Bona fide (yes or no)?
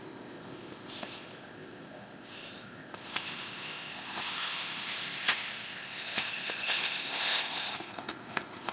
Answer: no